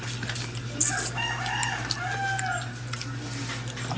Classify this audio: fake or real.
real